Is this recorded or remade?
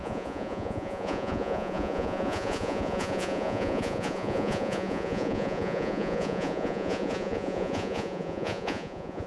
remade